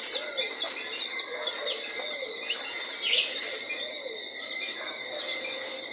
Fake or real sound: real